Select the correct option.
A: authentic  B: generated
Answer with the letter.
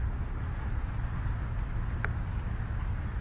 A